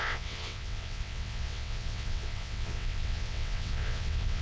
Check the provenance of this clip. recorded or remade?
remade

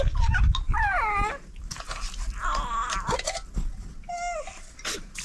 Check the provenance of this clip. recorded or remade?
recorded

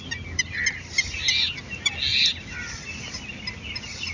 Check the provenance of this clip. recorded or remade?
recorded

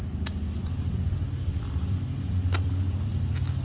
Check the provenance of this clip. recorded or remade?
remade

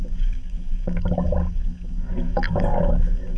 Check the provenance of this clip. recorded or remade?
remade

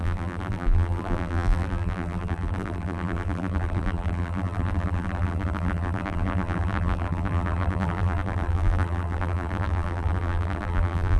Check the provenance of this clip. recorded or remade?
remade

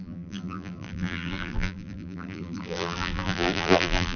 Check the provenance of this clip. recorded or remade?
remade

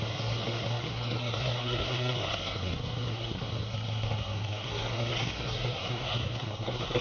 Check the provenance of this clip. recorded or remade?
remade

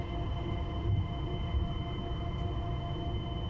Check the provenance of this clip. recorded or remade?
recorded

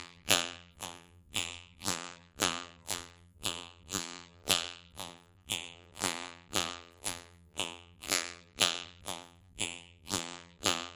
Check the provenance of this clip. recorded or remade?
remade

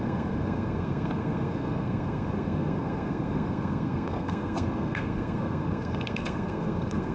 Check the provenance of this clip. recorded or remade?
remade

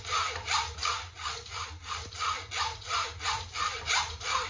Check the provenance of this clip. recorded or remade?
recorded